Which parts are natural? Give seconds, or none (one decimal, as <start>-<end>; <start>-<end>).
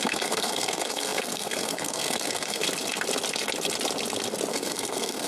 2.6-4.5